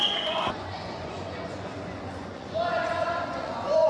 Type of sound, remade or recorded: remade